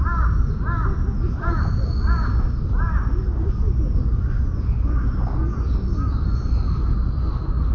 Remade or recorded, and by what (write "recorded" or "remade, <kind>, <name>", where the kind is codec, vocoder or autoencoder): recorded